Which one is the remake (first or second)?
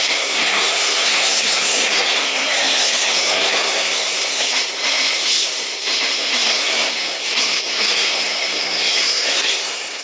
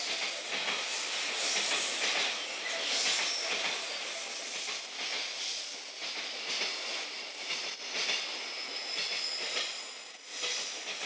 first